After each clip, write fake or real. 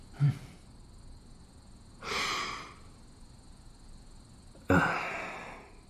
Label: real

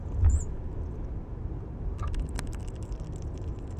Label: real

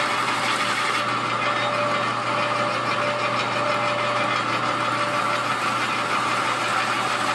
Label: real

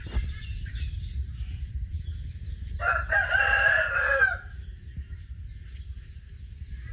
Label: fake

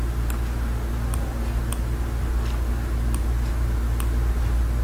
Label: real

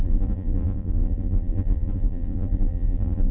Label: fake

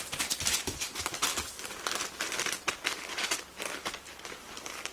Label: real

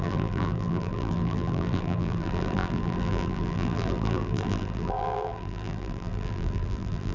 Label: fake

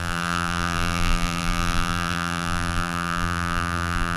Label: fake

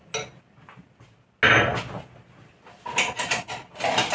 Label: real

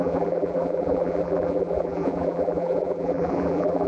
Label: fake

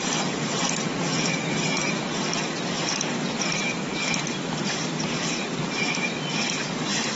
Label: real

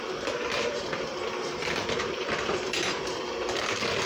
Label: fake